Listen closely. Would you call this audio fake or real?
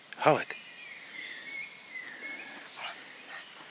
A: real